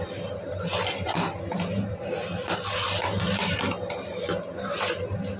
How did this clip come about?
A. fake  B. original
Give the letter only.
B